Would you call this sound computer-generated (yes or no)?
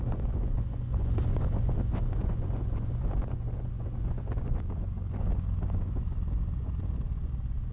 yes